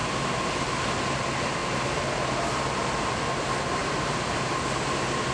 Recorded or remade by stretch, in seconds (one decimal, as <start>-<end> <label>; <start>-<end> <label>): 0.0-3.8 recorded; 3.8-4.6 remade; 4.6-5.3 recorded